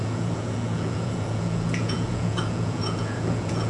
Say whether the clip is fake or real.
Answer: fake